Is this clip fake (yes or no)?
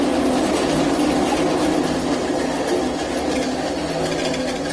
no